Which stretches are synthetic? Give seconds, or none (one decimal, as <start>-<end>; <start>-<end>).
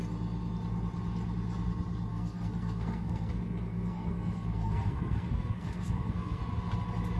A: 2.1-6.4